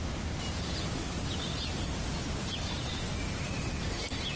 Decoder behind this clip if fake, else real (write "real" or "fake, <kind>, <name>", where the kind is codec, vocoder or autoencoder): real